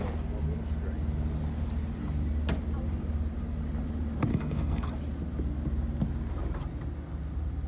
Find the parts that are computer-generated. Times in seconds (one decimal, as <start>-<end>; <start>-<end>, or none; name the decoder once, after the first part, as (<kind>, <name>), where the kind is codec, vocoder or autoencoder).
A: 4.3-4.9 (codec, SNAC)